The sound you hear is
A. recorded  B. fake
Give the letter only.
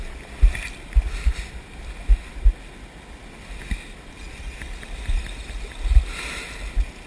A